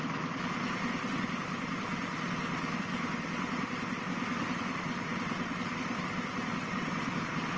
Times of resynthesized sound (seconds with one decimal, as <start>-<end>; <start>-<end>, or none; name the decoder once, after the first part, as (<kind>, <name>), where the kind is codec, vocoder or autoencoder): none